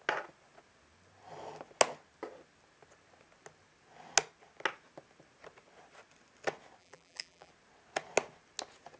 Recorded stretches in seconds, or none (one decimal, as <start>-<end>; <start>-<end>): 0.0-6.8; 7.5-9.0